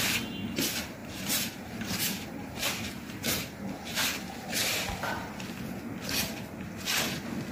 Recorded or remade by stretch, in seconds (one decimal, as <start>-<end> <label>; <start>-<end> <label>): 0.0-1.0 recorded; 1.0-5.3 remade; 5.3-7.5 recorded